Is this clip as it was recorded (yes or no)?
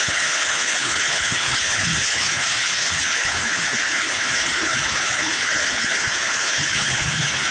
no